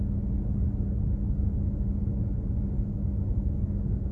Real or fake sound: real